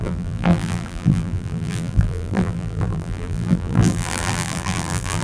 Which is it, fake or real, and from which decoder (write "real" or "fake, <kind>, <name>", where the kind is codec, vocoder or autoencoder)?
fake, vocoder, BigVGAN v2